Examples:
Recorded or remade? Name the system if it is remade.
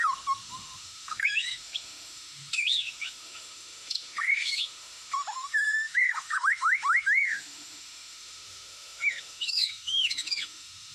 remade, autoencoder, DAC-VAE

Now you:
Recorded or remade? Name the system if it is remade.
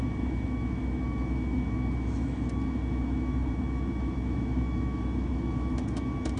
remade, autoencoder, DAC-VAE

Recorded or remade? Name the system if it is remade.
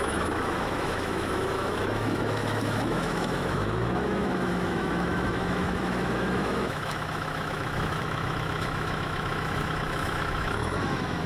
remade, autoencoder, DAC-VAE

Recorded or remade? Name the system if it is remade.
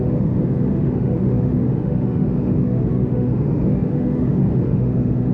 remade, autoencoder, DAC-VAE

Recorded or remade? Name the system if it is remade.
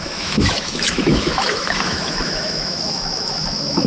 remade, autoencoder, DAC-VAE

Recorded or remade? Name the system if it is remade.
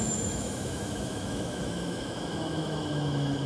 remade, autoencoder, DAC-VAE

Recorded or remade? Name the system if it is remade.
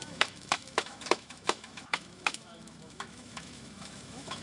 remade, autoencoder, DAC-VAE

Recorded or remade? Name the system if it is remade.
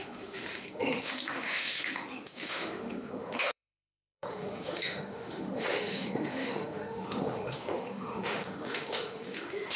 remade, autoencoder, DAC-VAE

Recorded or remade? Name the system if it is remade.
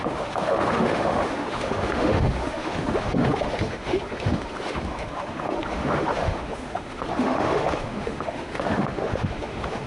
remade, autoencoder, DAC-VAE